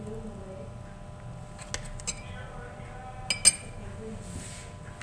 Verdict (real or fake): real